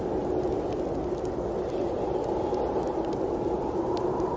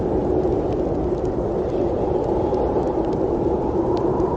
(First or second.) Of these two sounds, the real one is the first